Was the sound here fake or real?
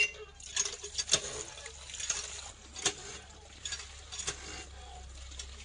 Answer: real